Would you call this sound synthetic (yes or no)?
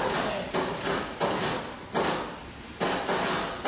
no